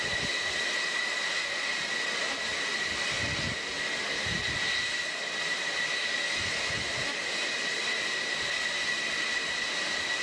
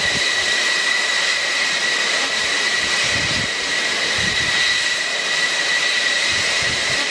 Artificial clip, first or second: second